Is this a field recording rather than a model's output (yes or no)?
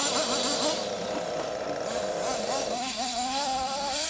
yes